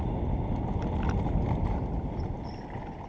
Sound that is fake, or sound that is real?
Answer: real